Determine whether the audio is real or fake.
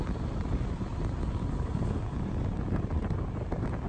real